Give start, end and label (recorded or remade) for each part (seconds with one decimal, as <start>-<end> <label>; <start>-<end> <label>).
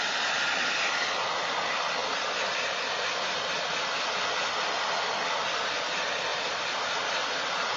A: 0.0-6.3 recorded; 6.3-7.8 remade